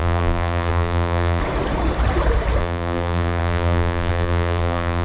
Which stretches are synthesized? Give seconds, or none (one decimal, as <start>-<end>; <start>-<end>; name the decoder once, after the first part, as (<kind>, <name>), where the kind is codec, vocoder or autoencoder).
0.0-1.4 (vocoder, BigVGAN v2); 2.6-5.0